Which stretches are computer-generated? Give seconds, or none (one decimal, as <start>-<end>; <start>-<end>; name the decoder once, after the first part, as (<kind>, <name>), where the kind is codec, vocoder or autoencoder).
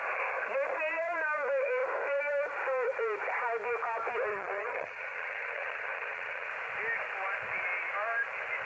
4.3-6.5 (vocoder, HiFi-GAN)